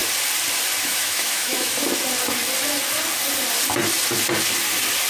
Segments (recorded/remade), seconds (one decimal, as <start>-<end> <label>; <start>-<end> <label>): 0.0-0.8 recorded; 0.8-1.9 remade; 1.9-5.1 recorded